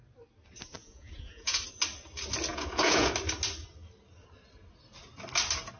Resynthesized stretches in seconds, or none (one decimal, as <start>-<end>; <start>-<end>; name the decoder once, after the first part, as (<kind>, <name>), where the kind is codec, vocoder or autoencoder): 0.8-1.6 (vocoder, Vocos); 2.5-3.1